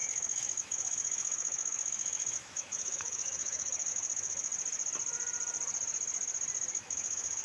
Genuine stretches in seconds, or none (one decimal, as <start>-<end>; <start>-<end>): 4.5-6.7